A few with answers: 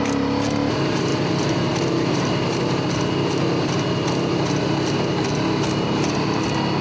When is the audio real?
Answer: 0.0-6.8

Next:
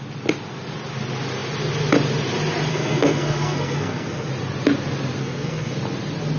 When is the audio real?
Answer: 0.0-2.7; 4.3-5.2; 5.7-6.4

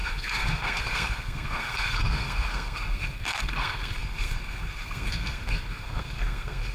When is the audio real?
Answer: none

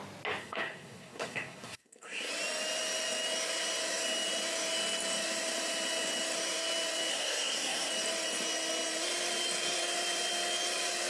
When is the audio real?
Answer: 0.0-0.4; 2.3-7.1; 7.9-11.1

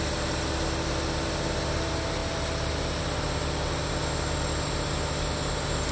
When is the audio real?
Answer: 0.0-5.9

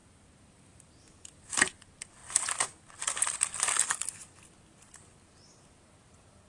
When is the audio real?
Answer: 0.0-6.5